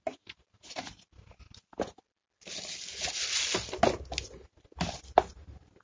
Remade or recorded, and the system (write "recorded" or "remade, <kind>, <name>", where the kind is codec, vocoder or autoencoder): recorded